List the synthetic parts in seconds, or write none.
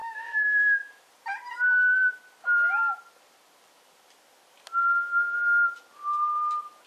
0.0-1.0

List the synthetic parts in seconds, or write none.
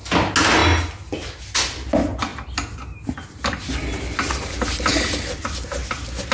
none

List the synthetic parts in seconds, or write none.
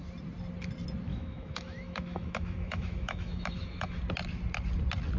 1.1-4.0